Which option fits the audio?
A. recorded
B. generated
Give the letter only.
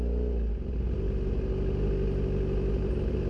A